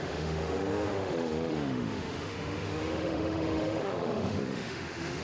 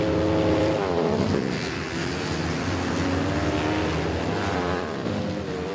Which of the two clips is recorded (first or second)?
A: second